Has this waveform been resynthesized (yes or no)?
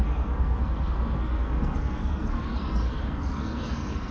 yes